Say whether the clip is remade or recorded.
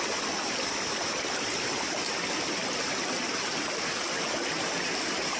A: recorded